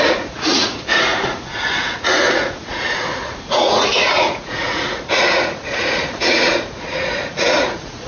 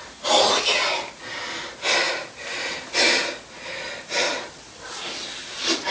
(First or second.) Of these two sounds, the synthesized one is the first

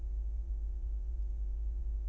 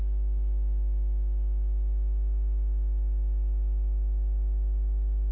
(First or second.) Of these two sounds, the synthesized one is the first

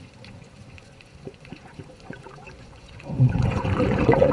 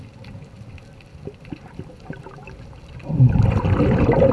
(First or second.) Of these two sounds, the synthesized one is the first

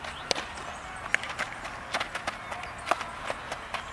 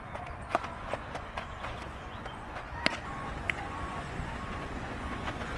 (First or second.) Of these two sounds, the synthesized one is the second